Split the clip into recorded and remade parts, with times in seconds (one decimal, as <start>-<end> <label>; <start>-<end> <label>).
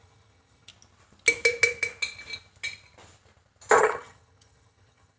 0.0-0.7 remade; 0.7-3.8 recorded; 3.8-5.2 remade